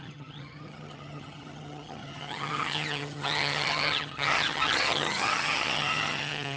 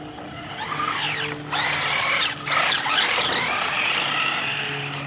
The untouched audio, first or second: second